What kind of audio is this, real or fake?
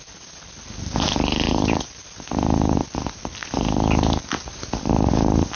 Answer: real